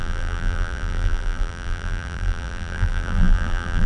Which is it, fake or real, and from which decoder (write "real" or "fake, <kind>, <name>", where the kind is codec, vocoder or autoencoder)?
fake, vocoder, BigVGAN v2